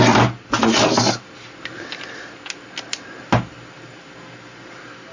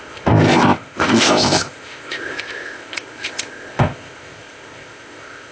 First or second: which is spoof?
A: second